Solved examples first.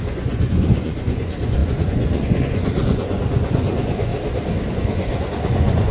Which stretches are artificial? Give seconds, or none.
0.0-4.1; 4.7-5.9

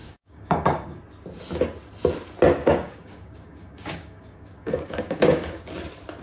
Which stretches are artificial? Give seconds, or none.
0.0-1.0; 2.6-5.7